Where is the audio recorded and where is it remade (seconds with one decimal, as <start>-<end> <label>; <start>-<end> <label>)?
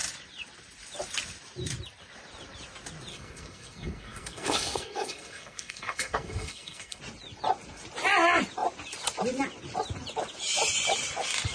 0.0-3.1 recorded; 3.1-7.0 remade; 7.0-11.5 recorded